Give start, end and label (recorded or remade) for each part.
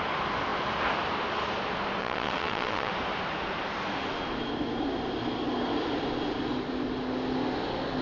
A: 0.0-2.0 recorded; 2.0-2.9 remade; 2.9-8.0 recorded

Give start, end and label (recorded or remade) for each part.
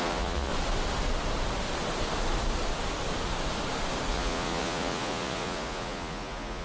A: 0.0-0.5 remade; 0.5-4.1 recorded; 4.1-6.6 remade